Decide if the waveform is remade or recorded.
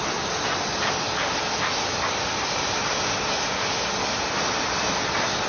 recorded